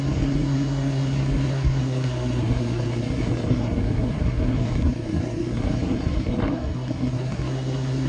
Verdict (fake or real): fake